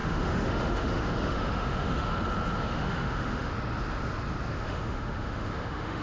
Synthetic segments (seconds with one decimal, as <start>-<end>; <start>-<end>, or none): 0.0-2.1; 2.6-3.5; 4.5-6.0